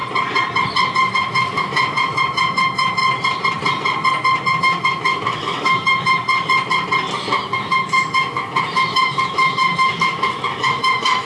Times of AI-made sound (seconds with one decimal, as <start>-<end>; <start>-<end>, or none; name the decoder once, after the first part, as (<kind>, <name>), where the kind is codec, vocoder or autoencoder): 1.1-3.0 (autoencoder, DAC-VAE); 4.6-6.2; 7.2-11.3